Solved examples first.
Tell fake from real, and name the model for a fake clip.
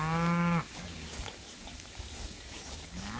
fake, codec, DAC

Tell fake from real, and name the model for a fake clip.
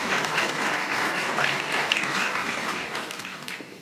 fake, codec, DAC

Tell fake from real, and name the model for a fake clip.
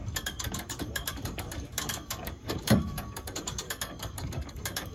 fake, codec, DAC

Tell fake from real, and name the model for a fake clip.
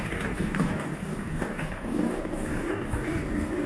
fake, codec, DAC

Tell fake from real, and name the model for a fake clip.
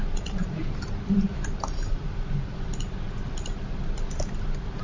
real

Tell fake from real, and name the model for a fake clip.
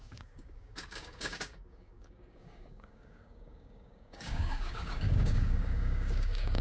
fake, codec, DAC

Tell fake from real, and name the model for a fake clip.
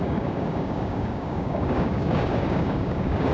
fake, codec, DAC